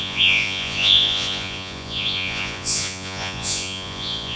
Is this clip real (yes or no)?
no